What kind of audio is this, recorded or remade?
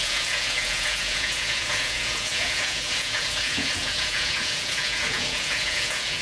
remade